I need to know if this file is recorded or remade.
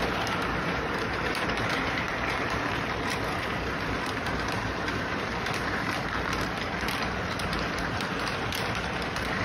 remade